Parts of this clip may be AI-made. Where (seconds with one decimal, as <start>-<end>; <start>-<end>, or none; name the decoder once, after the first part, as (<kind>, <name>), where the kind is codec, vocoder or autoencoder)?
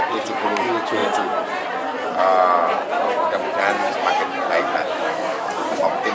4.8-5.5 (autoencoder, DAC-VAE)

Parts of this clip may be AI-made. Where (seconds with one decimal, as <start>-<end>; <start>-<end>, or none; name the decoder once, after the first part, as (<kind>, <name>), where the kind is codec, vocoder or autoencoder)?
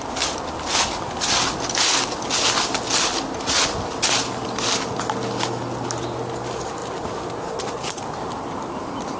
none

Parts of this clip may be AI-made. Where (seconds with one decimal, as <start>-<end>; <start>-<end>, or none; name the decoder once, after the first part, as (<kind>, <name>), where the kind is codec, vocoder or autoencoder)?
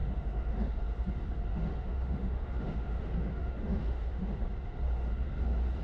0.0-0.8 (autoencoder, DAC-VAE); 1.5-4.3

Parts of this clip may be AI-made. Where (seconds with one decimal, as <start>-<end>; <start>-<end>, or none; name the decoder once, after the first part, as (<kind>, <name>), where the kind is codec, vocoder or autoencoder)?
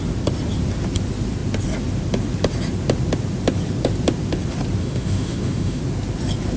4.8-5.8 (autoencoder, DAC-VAE)